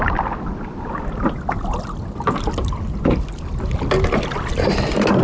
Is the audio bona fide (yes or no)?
yes